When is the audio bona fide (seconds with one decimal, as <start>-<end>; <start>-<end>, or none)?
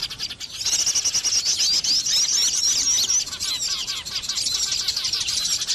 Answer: 0.0-5.7